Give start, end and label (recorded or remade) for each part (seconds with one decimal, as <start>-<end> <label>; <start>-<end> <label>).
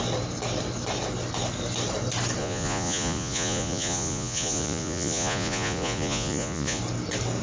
0.0-2.4 recorded; 2.4-6.8 remade; 6.8-7.4 recorded